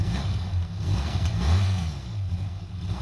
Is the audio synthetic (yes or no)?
yes